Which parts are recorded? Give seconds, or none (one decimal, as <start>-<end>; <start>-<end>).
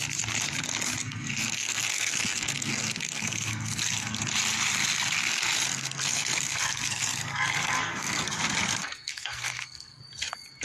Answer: 0.0-1.0; 4.2-5.7; 8.3-8.8; 10.0-10.6